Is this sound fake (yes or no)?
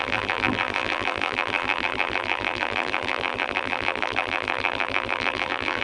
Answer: yes